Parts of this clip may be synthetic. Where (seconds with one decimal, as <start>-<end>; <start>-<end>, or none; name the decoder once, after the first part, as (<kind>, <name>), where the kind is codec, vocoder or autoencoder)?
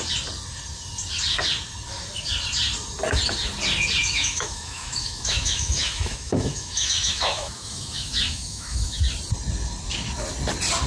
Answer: 4.0-9.0 (autoencoder, DAC-VAE)